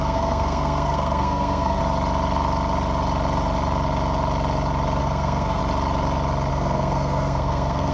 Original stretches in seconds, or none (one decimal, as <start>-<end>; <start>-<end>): 1.8-5.0; 5.6-6.5